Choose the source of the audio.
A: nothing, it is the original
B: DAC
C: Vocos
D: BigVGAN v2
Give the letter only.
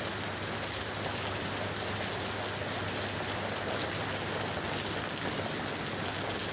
A